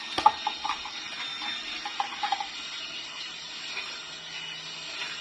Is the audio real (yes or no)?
yes